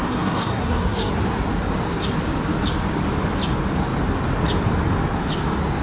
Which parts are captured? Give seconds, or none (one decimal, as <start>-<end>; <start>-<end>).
1.1-5.8